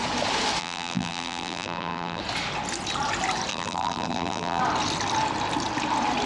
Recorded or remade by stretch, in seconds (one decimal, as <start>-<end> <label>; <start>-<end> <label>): 0.0-0.6 recorded; 0.6-2.2 remade; 2.2-3.5 recorded; 3.5-4.6 remade; 4.6-6.3 recorded